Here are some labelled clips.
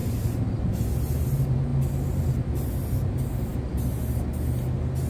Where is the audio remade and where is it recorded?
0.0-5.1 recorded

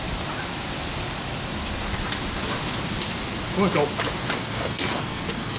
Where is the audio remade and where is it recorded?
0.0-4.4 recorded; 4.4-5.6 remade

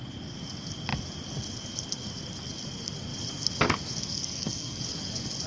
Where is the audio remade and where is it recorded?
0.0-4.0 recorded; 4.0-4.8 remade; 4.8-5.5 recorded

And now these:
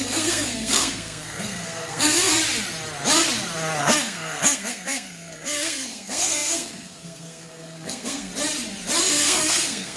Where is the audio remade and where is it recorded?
0.0-2.3 remade; 2.3-3.8 recorded; 3.8-8.3 remade; 8.3-9.0 recorded; 9.0-10.0 remade